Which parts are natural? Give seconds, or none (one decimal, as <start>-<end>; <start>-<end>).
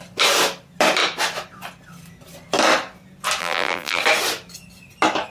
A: 0.0-3.4; 4.0-5.3